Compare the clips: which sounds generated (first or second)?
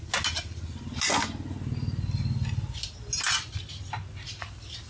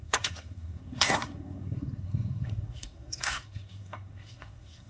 second